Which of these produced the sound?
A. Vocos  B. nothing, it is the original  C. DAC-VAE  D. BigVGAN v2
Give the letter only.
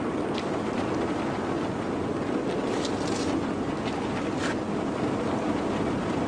B